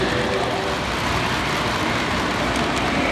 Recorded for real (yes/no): yes